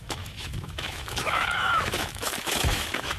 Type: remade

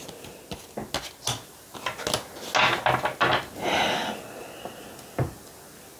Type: recorded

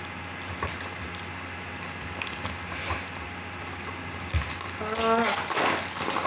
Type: recorded